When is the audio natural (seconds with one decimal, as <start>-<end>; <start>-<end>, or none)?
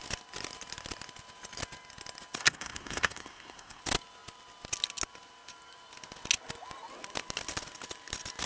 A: 0.0-2.4; 3.8-8.5